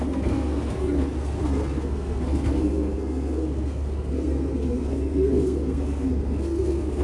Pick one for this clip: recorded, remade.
remade